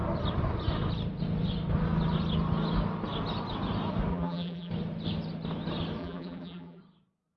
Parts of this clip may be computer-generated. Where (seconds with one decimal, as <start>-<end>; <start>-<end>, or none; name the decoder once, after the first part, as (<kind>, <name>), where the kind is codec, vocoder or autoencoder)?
4.1-4.7 (vocoder, BigVGAN v2); 6.0-6.8